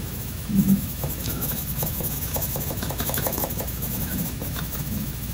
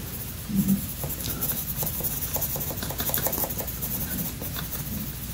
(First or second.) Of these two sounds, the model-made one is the first